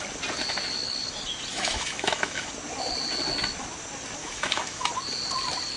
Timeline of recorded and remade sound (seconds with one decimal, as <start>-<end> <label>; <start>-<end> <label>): 0.0-1.5 recorded; 1.5-2.5 remade; 2.5-4.2 recorded; 4.2-4.9 remade; 4.9-5.8 recorded